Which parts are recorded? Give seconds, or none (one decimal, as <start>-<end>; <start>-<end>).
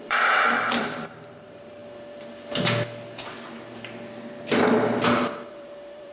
1.8-5.5